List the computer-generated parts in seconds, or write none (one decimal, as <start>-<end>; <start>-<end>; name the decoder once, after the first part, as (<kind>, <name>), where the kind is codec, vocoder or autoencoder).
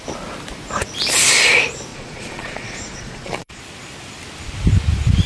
1.9-3.6 (vocoder, Vocos)